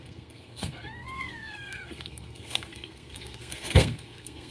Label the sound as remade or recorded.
remade